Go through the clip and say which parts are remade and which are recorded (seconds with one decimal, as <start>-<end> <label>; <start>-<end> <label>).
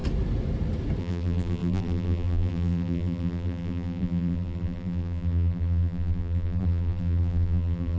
0.0-1.0 recorded; 1.0-8.0 remade